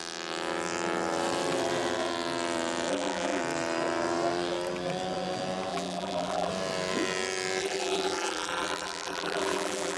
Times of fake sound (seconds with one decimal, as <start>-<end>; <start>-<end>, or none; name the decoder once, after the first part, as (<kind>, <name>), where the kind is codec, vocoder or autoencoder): 2.9-3.4 (vocoder, BigVGAN v2); 5.7-6.5; 7.6-10.0